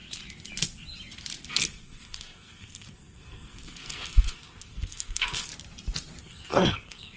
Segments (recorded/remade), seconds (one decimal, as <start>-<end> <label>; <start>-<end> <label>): 0.0-1.5 recorded; 1.5-5.5 remade; 5.5-6.2 recorded; 6.2-7.2 remade